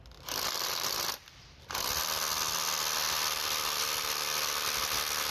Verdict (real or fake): fake